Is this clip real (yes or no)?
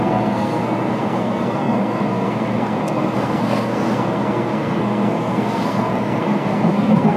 no